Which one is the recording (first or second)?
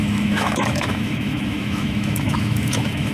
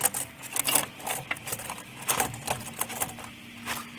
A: second